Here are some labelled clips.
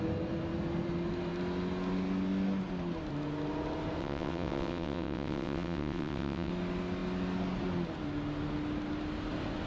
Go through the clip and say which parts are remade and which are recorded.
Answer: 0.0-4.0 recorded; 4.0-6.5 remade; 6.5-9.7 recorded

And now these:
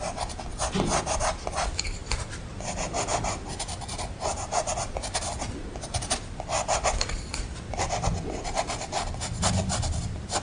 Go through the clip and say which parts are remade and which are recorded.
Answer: 0.0-10.4 recorded

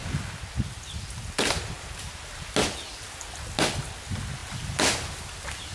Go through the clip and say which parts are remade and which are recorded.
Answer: 0.0-5.7 recorded